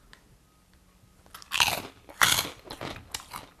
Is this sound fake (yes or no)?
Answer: no